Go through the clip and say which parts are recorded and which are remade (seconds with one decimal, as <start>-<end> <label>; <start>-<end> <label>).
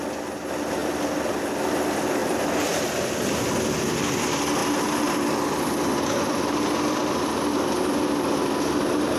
0.0-2.2 recorded; 2.2-2.8 remade; 2.8-7.0 recorded; 7.0-7.8 remade; 7.8-9.2 recorded